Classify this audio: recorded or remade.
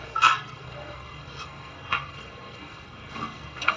remade